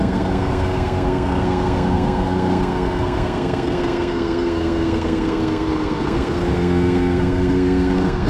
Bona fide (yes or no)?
no